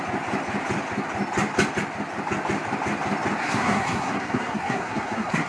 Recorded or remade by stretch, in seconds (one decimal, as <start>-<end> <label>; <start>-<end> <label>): 0.0-3.4 recorded; 3.4-5.5 remade